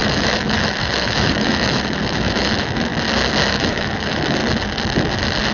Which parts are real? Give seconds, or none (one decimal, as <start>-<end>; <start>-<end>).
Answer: 2.9-3.5; 4.4-5.5